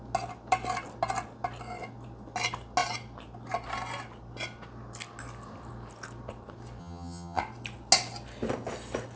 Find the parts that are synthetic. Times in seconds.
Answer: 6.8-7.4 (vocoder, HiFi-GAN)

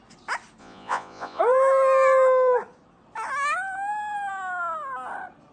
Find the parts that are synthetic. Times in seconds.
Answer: 0.6-1.4 (vocoder, Vocos)

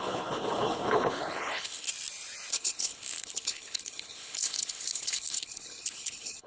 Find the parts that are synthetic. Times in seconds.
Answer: 0.0-1.9 (codec, HILCodec); 2.5-6.5